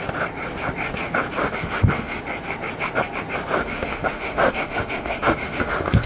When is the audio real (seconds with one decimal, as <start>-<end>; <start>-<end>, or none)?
0.0-1.4; 2.2-3.6